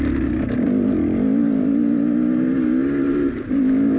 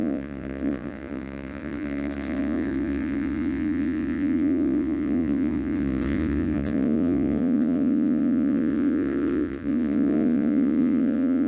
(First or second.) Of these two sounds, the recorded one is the first